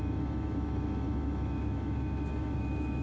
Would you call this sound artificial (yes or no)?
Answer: yes